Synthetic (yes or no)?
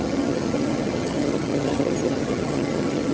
yes